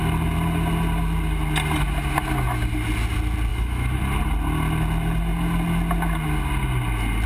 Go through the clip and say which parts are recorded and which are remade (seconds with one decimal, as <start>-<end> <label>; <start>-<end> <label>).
0.0-3.5 recorded; 3.5-4.0 remade; 4.0-7.3 recorded